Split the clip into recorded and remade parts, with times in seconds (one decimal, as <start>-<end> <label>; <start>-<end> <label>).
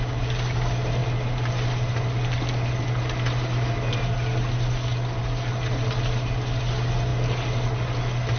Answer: 0.0-8.4 recorded